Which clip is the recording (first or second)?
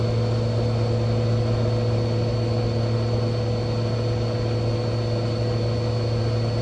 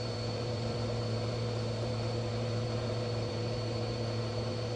first